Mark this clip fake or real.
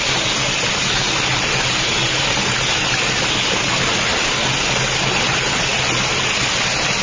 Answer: real